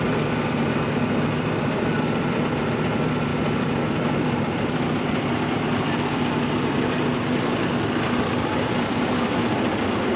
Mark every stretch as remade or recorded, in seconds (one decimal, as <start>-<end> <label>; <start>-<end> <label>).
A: 0.0-10.2 remade